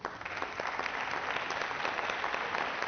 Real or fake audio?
real